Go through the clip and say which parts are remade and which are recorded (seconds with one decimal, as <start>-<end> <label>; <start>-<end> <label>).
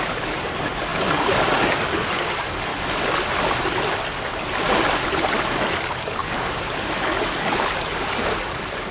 0.0-2.7 remade; 2.7-5.7 recorded; 5.7-8.9 remade